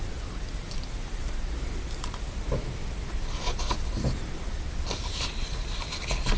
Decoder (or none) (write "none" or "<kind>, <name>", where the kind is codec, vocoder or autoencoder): none